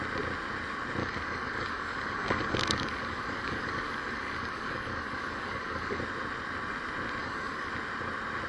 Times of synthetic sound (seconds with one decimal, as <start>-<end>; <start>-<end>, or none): 1.0-6.0; 7.2-7.7